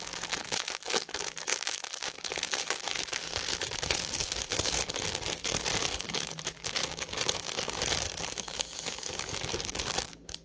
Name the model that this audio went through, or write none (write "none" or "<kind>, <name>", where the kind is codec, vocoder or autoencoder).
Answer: codec, DAC